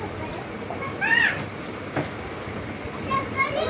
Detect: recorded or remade remade